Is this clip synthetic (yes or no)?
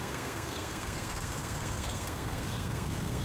yes